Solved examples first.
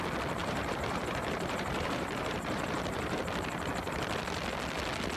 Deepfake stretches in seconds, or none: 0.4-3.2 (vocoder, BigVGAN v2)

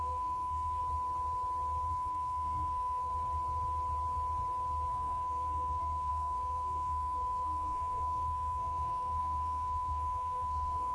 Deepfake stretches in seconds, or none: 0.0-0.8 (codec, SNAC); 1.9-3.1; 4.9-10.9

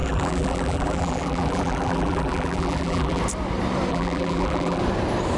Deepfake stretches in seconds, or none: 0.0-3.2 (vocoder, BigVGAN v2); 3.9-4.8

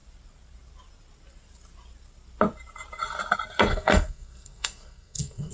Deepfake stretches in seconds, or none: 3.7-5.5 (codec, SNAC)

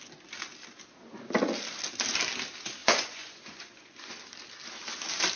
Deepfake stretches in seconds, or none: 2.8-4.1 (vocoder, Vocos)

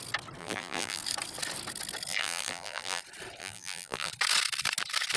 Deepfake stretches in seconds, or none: 0.4-1.0 (vocoder, BigVGAN v2); 2.1-3.0; 3.4-4.1